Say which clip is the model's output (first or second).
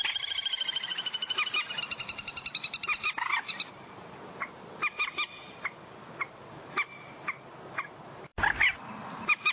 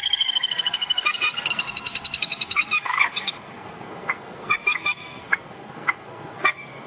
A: second